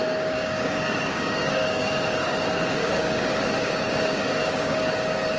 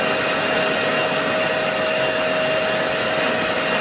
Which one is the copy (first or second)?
first